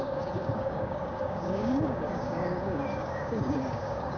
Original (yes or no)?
no